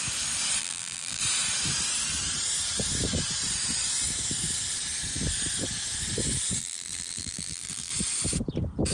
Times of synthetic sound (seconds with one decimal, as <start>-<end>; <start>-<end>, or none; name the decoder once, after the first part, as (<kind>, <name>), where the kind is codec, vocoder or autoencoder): 0.6-1.2 (vocoder, BigVGAN v2); 6.6-7.9